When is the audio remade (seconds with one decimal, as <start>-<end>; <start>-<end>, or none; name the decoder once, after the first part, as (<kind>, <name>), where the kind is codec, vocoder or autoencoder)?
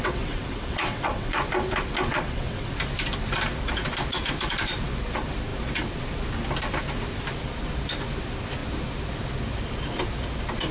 0.0-1.4 (vocoder, WaveNeXt); 2.1-2.7